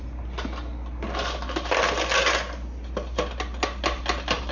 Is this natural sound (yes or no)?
yes